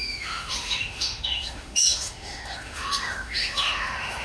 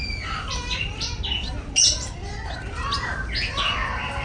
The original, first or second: second